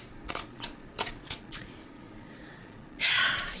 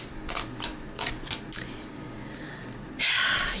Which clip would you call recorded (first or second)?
second